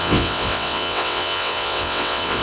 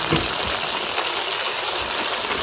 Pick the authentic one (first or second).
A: second